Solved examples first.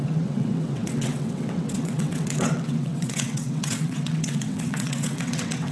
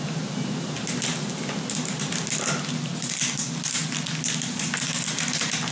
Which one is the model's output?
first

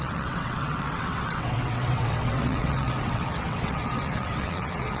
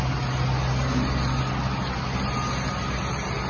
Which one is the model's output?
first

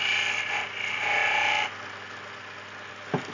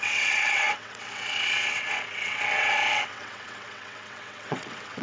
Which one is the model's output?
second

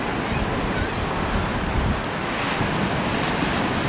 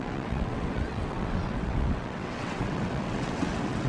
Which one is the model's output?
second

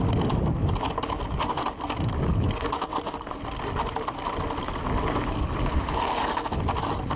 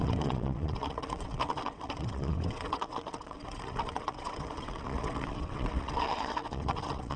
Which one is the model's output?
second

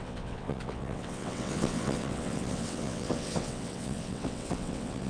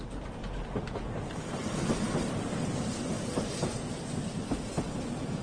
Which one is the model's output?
first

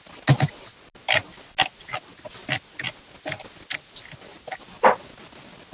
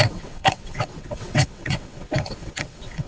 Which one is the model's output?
second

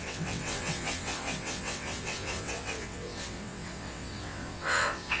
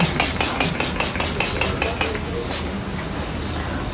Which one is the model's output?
first